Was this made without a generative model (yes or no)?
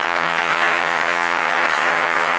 no